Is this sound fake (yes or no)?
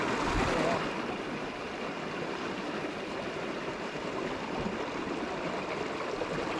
no